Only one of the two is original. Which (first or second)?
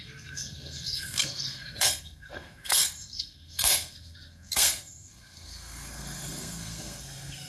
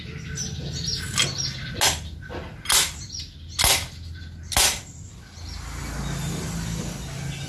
second